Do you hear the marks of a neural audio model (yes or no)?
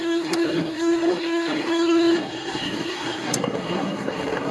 yes